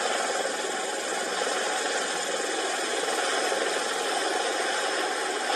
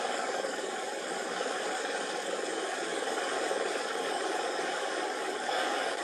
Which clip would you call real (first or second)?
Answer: first